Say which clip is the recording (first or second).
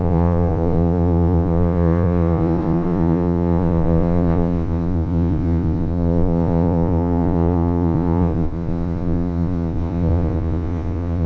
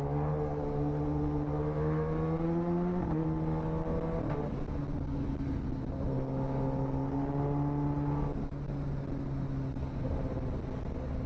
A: second